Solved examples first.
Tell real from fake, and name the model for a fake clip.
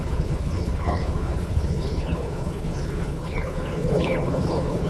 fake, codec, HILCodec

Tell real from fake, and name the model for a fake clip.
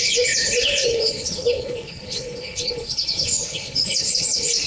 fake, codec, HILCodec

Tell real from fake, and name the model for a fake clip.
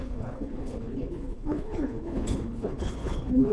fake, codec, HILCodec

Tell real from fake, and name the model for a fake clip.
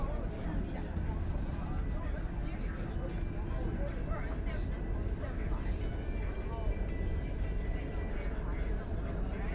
real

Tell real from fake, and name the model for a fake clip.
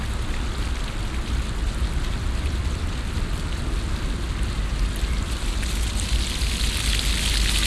real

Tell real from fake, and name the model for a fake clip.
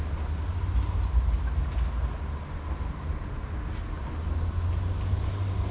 real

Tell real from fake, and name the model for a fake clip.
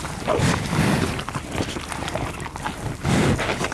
real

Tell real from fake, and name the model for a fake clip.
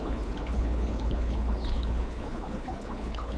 fake, codec, HILCodec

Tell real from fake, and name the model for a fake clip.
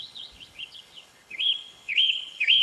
fake, codec, HILCodec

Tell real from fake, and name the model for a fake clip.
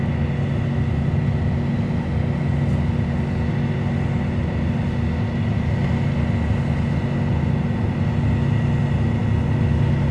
real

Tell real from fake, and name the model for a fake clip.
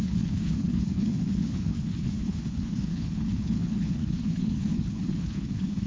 fake, codec, HILCodec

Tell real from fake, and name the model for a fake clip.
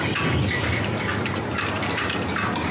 real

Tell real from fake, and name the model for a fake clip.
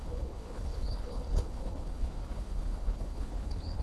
fake, codec, HILCodec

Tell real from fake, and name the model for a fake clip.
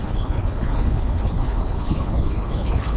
fake, codec, HILCodec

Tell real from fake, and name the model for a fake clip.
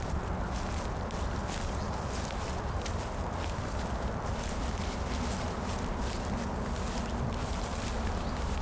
real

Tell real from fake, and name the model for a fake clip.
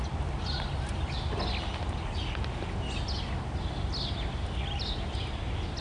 real